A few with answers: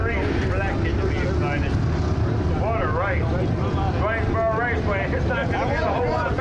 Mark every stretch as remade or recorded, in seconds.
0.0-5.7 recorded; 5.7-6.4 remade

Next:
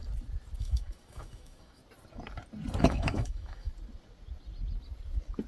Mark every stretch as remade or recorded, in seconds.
0.0-0.6 recorded; 0.6-1.8 remade; 1.8-2.8 recorded; 2.8-3.7 remade; 3.7-5.5 recorded

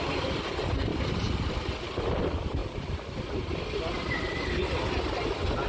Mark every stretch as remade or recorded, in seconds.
0.0-0.9 recorded; 0.9-2.2 remade; 2.2-5.7 recorded

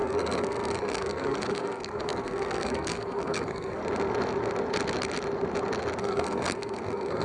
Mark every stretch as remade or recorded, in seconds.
0.0-3.8 remade; 3.8-6.0 recorded; 6.0-7.2 remade